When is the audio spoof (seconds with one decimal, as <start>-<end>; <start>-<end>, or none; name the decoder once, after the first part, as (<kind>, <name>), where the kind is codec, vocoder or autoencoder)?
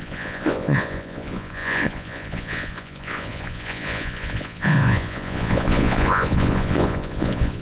0.0-7.6 (vocoder, Vocos)